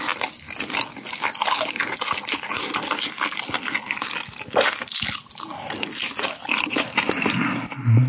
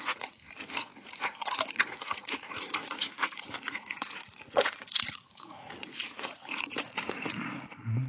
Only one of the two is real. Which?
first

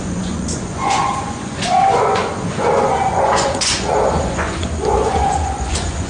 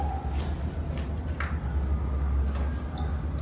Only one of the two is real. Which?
second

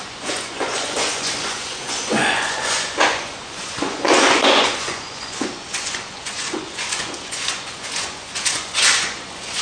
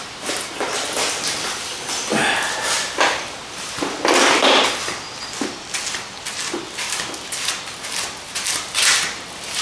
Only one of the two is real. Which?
second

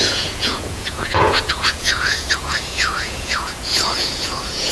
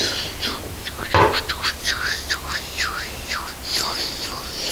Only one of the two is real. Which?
second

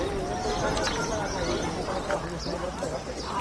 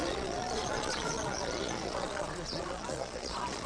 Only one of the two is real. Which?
first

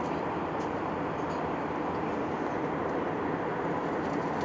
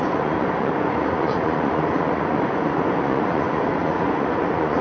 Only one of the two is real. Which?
first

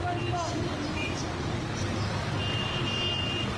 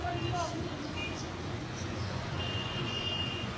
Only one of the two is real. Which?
first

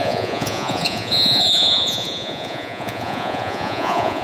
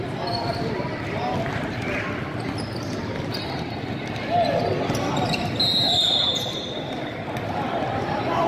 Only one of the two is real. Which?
second